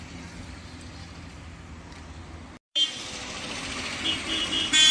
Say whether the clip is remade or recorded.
recorded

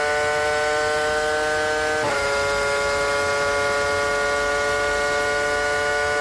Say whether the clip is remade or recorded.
recorded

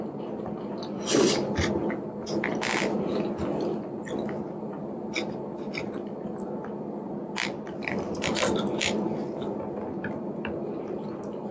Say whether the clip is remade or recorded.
recorded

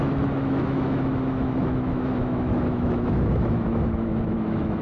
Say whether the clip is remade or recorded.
remade